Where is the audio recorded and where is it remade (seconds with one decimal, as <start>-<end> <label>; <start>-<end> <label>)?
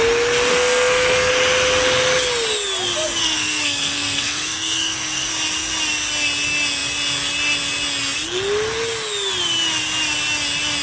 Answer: 0.0-0.5 recorded; 0.5-1.3 remade; 1.3-3.2 recorded; 3.2-5.3 remade; 5.3-10.8 recorded